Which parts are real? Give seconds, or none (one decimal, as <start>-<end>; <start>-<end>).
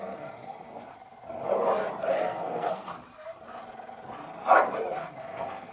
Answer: 0.9-2.1; 2.9-5.2